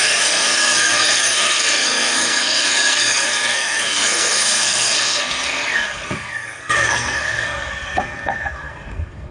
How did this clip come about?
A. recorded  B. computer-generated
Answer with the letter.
B